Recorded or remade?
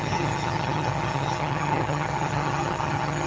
remade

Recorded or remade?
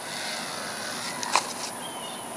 recorded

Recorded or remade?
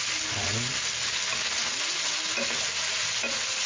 recorded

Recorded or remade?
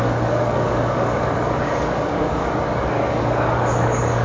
remade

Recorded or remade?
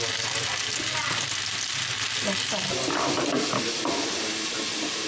recorded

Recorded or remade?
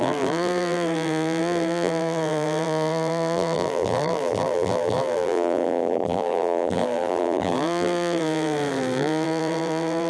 remade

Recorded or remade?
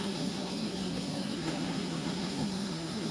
remade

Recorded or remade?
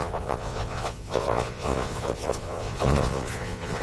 remade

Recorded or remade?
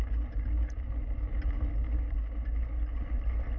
recorded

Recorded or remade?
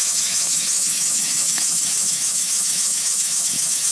remade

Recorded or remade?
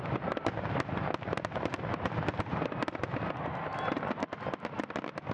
recorded